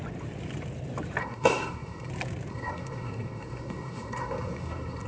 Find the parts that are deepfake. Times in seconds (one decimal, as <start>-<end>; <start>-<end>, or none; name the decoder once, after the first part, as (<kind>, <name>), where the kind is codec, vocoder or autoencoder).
1.2-2.1 (codec, SNAC); 2.5-5.1